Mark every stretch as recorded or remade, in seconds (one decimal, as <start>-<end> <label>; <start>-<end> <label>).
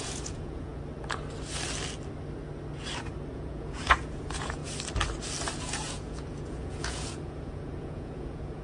0.0-0.7 remade; 0.7-3.3 recorded; 3.3-4.6 remade; 4.6-5.6 recorded; 5.6-8.6 remade